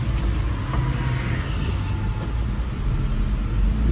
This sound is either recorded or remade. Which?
recorded